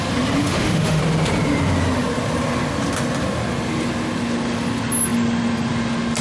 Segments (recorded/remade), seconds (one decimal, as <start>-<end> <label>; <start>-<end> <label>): 0.0-0.4 recorded; 0.4-1.0 remade; 1.0-6.2 recorded

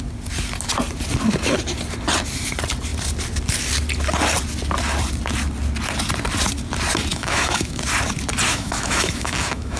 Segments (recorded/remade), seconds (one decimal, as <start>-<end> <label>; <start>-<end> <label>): 0.0-7.1 recorded; 7.1-7.8 remade; 7.8-8.5 recorded; 8.5-9.8 remade